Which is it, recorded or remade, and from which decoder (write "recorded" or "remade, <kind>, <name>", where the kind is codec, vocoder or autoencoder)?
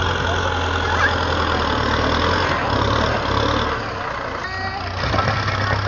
recorded